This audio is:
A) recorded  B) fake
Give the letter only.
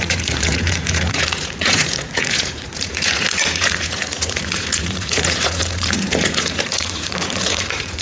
B